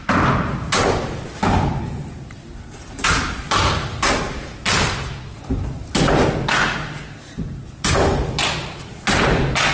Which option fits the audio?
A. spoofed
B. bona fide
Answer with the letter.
B